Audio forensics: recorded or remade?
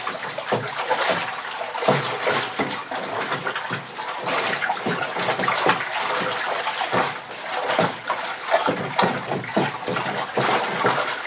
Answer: recorded